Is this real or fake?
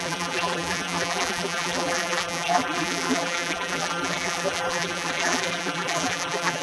fake